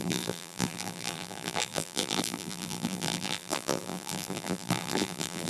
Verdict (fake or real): fake